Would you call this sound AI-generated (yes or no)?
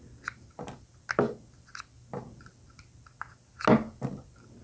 no